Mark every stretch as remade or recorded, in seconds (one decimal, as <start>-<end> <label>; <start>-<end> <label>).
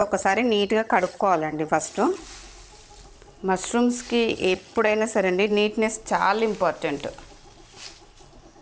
0.0-2.2 remade; 2.2-4.3 recorded; 4.3-5.5 remade; 5.5-8.6 recorded